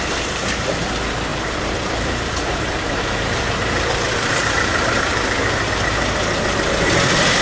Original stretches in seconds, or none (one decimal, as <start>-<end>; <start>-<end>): 0.0-1.3; 5.7-7.4